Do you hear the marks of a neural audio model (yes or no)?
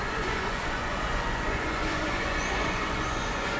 yes